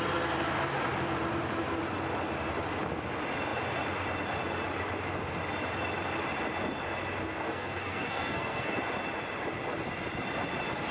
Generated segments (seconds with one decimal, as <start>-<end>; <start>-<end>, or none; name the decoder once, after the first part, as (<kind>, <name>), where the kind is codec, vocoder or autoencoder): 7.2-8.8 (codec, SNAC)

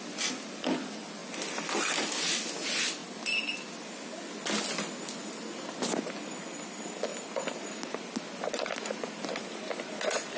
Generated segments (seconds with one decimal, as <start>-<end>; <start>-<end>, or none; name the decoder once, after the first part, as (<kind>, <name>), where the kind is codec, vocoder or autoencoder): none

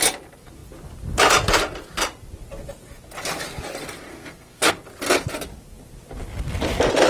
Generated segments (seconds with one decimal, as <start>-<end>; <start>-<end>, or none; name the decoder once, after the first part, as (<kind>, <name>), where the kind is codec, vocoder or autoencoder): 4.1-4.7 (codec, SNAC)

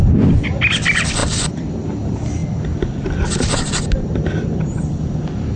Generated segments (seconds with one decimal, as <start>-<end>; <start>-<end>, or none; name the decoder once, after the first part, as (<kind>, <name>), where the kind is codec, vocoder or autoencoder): none